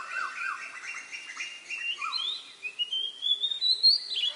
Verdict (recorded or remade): recorded